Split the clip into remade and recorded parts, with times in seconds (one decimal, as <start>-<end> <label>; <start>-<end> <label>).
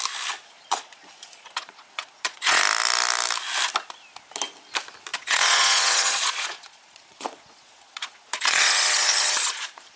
0.0-0.4 recorded; 0.4-2.6 remade; 2.6-5.1 recorded; 5.1-10.0 remade